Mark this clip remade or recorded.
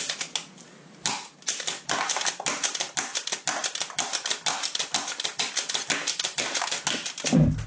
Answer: recorded